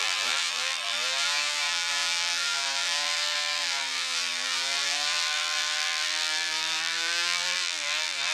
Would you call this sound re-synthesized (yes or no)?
yes